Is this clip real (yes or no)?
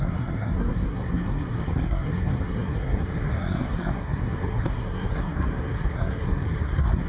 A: no